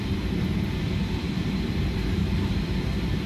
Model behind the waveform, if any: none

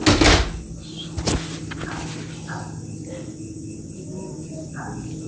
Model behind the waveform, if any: none